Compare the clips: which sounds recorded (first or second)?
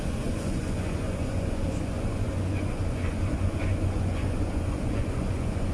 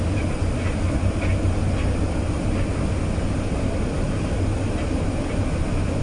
second